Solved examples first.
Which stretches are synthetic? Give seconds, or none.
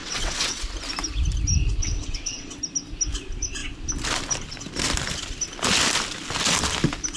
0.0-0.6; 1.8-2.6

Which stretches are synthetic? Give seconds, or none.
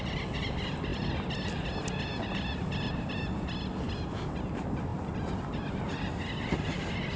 none